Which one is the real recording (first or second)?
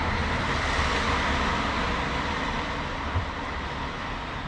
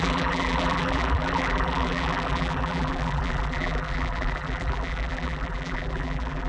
first